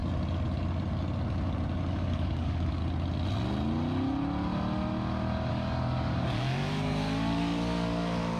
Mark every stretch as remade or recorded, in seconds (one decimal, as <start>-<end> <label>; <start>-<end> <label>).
0.0-1.9 recorded; 1.9-2.8 remade; 2.8-5.5 recorded; 5.5-8.4 remade